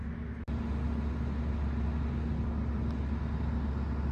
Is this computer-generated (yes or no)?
no